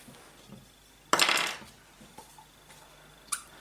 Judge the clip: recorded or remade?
recorded